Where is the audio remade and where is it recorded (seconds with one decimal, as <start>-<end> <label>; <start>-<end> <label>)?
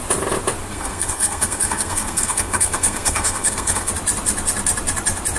0.0-0.7 recorded; 0.7-3.9 remade; 3.9-5.4 recorded